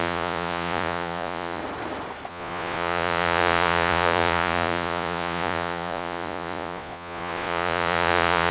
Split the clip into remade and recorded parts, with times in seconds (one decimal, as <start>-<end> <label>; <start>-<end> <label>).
0.0-1.6 remade; 1.6-2.3 recorded; 2.3-8.5 remade

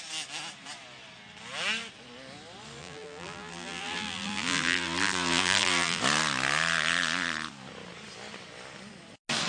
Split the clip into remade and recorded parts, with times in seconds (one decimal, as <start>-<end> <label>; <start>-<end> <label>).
0.0-2.8 recorded; 2.8-6.0 remade; 6.0-9.5 recorded

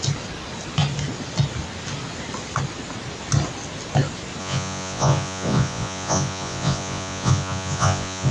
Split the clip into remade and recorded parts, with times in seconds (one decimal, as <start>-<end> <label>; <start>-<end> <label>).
0.0-4.4 recorded; 4.4-8.3 remade